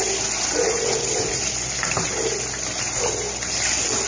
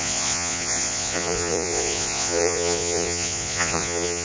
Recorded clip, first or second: first